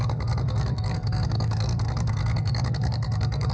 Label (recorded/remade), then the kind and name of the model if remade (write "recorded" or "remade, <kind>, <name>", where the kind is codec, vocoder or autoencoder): remade, codec, SNAC